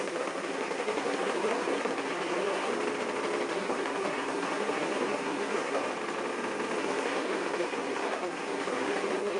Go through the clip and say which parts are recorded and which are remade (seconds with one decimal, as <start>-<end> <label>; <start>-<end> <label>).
0.0-2.7 remade; 2.7-3.5 recorded; 3.5-5.8 remade; 5.8-6.8 recorded; 6.8-9.4 remade